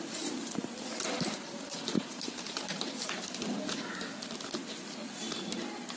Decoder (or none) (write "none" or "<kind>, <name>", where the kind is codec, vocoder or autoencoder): none